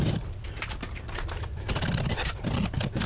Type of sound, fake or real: fake